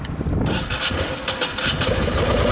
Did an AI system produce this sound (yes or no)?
no